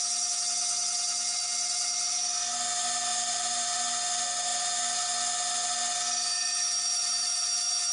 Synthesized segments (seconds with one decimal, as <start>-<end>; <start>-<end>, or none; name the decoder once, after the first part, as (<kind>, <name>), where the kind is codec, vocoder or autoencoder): 3.1-3.8 (vocoder, BigVGAN v2)

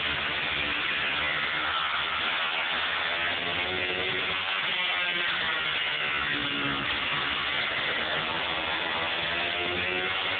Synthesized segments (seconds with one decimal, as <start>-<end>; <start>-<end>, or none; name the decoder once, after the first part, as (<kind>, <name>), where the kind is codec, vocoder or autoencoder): 8.3-8.9 (vocoder, BigVGAN v2)

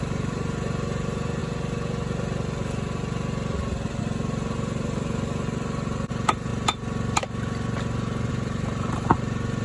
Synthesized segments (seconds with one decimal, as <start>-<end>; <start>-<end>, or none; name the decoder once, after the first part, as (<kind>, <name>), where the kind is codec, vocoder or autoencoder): 0.0-1.4 (vocoder, BigVGAN v2); 4.0-6.5; 8.3-9.6

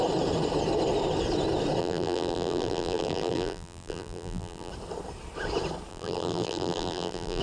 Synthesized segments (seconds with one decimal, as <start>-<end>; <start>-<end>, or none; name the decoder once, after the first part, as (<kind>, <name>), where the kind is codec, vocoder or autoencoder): 1.8-4.7 (vocoder, BigVGAN v2); 5.9-7.4

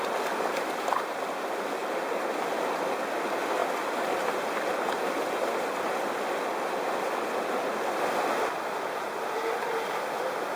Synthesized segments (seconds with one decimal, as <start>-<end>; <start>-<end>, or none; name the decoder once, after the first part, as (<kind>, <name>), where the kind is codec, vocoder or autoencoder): none

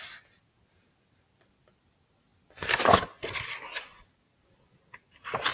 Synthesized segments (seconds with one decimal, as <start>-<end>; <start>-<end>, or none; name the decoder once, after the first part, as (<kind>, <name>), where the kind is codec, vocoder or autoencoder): none